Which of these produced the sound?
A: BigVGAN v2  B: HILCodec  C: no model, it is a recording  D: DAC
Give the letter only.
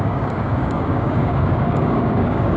D